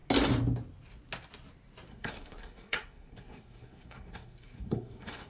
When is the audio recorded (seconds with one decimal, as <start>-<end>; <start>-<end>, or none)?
0.0-1.9

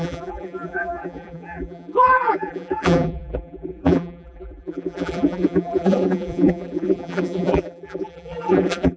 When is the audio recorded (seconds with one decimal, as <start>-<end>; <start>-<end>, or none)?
none

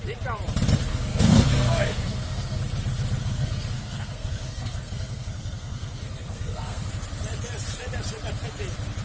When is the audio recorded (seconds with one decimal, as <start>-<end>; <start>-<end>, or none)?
0.0-0.9; 2.6-3.2; 6.9-9.0

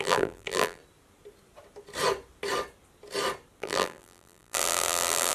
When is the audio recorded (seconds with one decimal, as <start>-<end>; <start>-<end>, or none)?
0.8-3.6

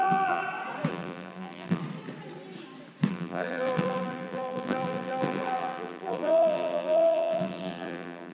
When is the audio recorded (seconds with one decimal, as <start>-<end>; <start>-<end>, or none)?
0.4-0.9; 1.8-3.1

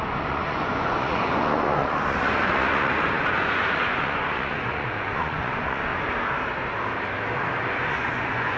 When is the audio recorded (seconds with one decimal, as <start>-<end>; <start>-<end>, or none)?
5.9-7.9